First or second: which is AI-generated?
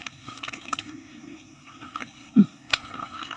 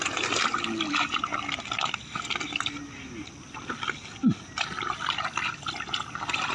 first